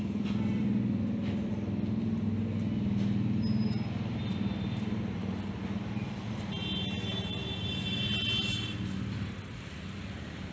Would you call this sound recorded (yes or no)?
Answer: yes